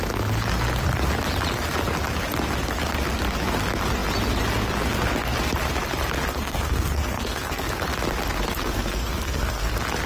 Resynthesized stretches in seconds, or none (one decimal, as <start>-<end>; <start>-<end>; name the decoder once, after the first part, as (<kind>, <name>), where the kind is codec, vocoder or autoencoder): 6.3-7.7 (codec, SNAC); 8.6-9.7